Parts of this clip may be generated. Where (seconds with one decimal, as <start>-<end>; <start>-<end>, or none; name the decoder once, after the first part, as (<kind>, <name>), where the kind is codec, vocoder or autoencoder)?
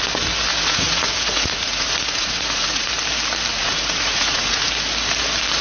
0.5-2.9 (vocoder, Vocos); 3.5-4.7